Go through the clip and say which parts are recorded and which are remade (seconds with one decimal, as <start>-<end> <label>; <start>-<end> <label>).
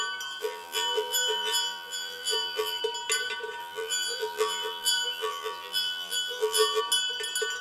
0.0-0.4 recorded; 0.4-2.8 remade; 2.8-3.6 recorded; 3.6-6.8 remade; 6.8-7.6 recorded